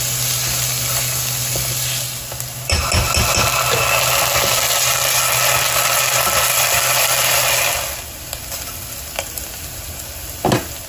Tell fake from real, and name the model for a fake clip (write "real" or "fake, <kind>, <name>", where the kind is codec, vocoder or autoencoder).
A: real